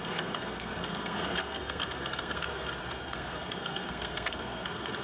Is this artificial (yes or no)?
yes